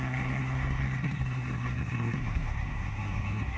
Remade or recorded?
remade